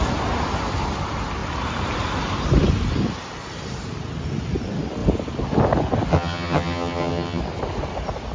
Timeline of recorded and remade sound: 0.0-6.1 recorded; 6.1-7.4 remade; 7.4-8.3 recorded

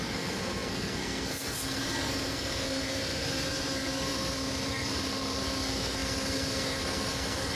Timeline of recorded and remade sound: 0.0-7.6 remade